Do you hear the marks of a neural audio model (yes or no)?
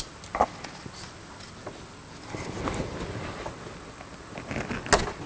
no